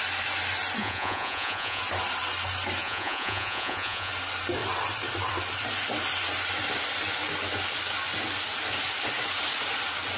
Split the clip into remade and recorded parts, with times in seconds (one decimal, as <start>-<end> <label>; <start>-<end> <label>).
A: 0.0-0.8 recorded; 0.8-1.8 remade; 1.8-2.8 recorded; 2.8-4.1 remade; 4.1-10.2 recorded